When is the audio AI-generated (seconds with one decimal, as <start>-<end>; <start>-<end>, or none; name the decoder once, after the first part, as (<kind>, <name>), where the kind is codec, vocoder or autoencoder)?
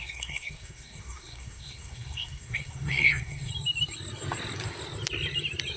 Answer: 0.0-3.5 (codec, SNAC)